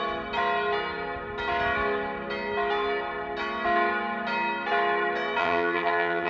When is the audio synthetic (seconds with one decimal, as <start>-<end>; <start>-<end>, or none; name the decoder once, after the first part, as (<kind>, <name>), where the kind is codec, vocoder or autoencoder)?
5.4-6.3 (vocoder, HiFi-GAN)